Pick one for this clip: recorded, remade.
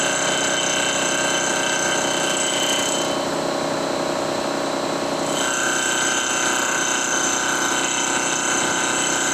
recorded